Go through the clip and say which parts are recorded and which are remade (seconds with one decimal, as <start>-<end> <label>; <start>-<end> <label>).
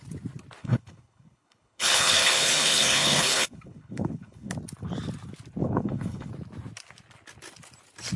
0.0-0.6 recorded; 0.6-4.5 remade; 4.5-5.6 recorded; 5.6-6.3 remade; 6.3-8.2 recorded